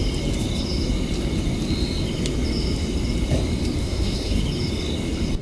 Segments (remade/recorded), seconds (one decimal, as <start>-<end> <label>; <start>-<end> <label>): 0.0-3.8 recorded; 3.8-4.4 remade; 4.4-5.4 recorded